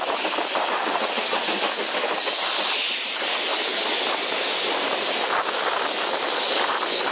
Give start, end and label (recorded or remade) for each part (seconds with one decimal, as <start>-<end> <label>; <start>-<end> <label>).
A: 0.0-0.8 recorded; 0.8-1.6 remade; 1.6-7.1 recorded